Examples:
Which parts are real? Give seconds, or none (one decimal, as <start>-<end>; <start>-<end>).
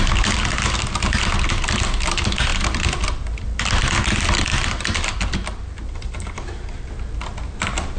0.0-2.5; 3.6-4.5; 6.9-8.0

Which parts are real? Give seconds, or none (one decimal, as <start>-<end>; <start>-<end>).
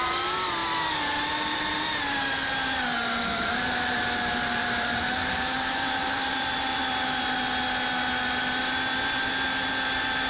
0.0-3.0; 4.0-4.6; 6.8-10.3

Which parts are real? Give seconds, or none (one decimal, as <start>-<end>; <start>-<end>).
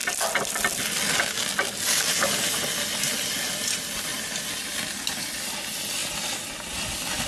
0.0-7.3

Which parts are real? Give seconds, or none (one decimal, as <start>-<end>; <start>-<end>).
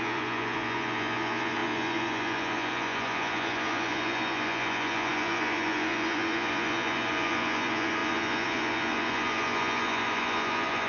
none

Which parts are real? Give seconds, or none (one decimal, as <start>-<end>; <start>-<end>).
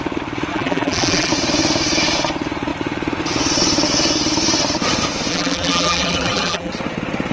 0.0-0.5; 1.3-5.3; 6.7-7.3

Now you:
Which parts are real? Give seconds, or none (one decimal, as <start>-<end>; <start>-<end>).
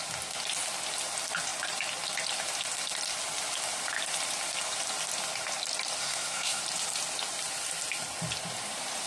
0.0-6.0; 6.6-9.1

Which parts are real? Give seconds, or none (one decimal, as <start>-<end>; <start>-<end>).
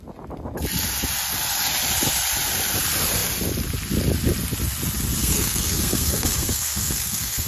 0.0-5.2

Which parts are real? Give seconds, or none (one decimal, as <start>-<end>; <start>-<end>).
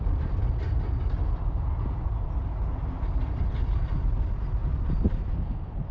0.0-5.9